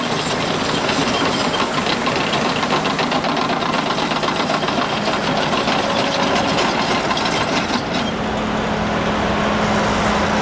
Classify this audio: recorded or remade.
recorded